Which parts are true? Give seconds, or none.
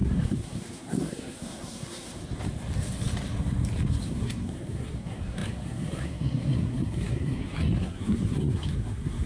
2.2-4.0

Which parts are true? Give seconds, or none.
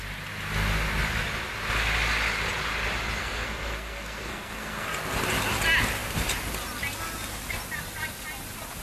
0.0-3.2; 4.9-8.8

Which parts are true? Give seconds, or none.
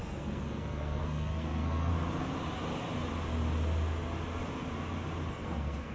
1.9-5.3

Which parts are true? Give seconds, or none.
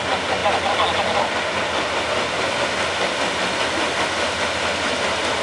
0.0-5.4